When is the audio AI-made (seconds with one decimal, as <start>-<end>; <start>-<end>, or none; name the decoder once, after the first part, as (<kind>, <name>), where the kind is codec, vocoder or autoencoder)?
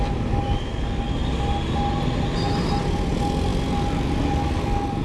none